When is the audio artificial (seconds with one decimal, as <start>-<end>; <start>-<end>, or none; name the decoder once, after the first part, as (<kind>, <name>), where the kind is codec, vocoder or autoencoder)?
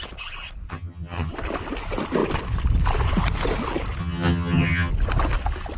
0.7-1.3 (vocoder, HiFi-GAN); 4.0-4.9